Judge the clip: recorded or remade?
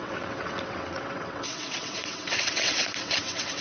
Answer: remade